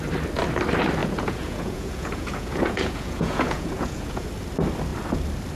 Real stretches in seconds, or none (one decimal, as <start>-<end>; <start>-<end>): 0.0-1.0; 4.3-5.5

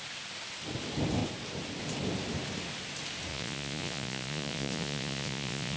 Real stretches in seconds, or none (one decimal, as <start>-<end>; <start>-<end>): 0.0-3.3

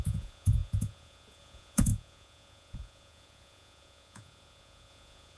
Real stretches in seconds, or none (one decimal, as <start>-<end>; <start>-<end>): none

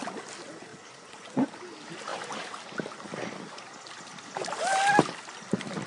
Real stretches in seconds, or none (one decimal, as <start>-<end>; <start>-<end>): 0.0-0.7; 1.5-5.9